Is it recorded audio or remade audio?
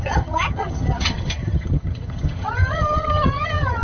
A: remade